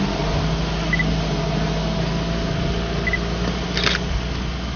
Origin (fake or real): real